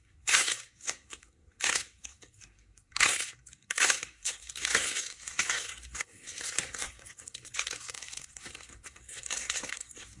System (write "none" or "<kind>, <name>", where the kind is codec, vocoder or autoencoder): codec, SNAC